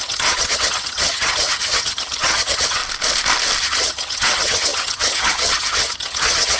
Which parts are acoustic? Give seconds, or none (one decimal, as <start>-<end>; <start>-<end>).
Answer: 2.8-3.6